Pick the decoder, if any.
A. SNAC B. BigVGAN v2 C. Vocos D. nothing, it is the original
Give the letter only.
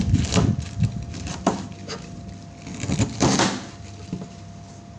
D